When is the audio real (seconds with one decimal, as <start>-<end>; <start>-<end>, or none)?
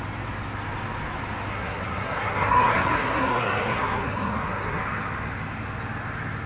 0.0-1.5; 4.8-6.5